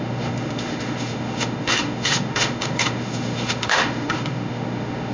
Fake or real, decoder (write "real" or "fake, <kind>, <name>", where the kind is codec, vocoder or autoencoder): fake, autoencoder, DAC-VAE